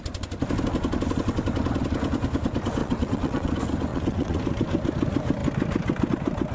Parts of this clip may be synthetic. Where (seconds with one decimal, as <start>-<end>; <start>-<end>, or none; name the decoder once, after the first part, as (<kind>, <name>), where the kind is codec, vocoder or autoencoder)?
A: 2.8-3.5 (vocoder, WaveNeXt); 3.9-4.4